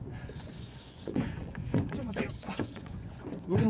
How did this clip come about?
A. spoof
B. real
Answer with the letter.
A